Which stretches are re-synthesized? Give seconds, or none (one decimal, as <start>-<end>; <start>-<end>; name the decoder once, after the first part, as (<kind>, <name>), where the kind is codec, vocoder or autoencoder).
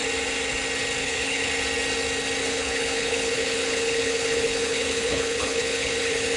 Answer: 1.0-1.5 (codec, HILCodec); 2.4-6.4